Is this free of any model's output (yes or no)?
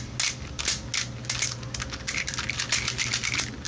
yes